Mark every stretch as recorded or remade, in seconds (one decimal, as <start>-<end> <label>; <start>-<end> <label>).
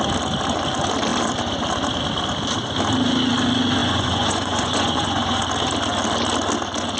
0.0-3.8 recorded; 3.8-5.4 remade; 5.4-7.0 recorded